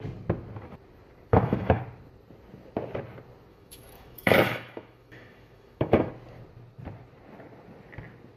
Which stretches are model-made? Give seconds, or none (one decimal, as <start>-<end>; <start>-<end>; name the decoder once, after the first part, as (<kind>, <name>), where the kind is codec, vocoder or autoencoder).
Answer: 1.3-1.8 (autoencoder, DAC-VAE); 3.5-6.1